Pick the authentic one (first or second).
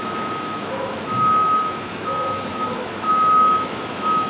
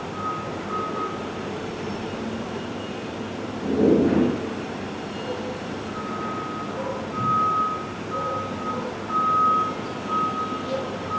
second